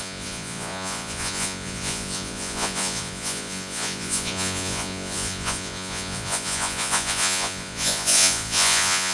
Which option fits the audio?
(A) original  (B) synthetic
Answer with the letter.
B